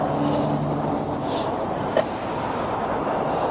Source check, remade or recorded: recorded